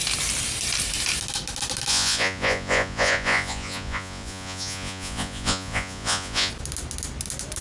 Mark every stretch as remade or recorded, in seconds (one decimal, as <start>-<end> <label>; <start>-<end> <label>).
0.0-1.9 recorded; 1.9-6.5 remade; 6.5-7.6 recorded